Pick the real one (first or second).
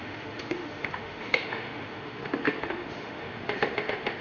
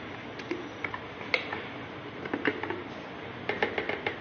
second